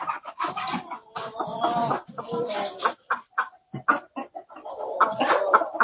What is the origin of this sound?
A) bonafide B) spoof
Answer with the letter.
A